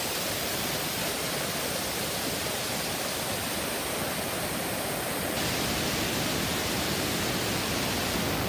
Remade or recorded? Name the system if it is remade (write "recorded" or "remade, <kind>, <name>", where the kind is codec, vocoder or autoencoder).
recorded